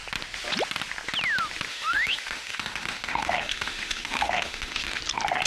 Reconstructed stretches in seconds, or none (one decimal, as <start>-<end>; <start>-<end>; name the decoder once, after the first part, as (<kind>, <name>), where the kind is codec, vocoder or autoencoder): 1.7-5.0 (autoencoder, DAC-VAE)